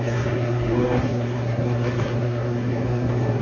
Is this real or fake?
fake